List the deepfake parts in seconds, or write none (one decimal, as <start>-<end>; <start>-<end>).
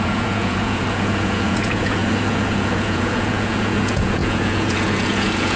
0.0-5.6